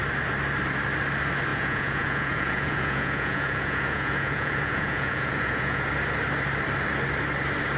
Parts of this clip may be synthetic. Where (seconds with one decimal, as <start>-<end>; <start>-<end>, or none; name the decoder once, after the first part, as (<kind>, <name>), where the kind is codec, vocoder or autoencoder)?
1.5-5.8 (vocoder, Vocos)